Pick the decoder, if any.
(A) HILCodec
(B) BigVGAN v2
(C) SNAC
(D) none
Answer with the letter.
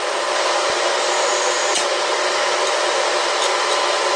D